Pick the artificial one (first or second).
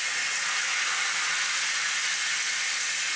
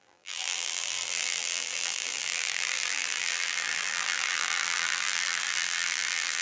second